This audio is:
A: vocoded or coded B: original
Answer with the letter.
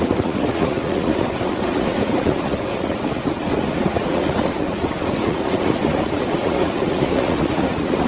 A